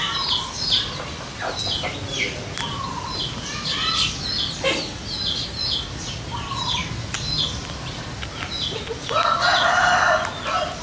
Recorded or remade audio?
recorded